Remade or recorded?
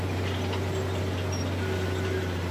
recorded